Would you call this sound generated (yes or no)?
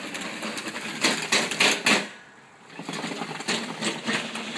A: no